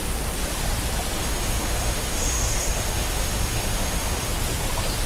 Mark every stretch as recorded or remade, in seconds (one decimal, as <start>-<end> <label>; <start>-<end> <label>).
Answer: 0.0-1.2 recorded; 1.2-4.3 remade; 4.3-5.1 recorded

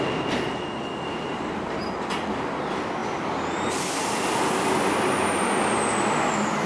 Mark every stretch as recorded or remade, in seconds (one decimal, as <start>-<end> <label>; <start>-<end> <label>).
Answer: 0.0-6.7 recorded

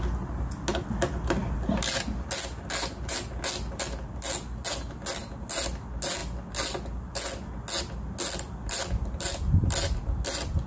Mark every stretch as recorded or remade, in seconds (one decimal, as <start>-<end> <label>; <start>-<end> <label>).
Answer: 0.0-10.7 recorded